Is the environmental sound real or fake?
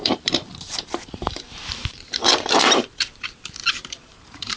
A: fake